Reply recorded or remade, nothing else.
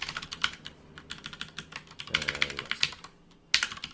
recorded